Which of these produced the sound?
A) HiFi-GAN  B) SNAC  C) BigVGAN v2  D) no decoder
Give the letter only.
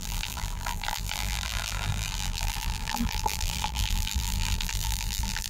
C